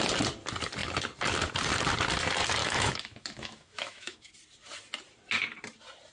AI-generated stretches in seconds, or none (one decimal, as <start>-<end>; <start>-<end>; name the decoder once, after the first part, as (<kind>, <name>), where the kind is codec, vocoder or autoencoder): 2.6-4.3 (autoencoder, DAC-VAE)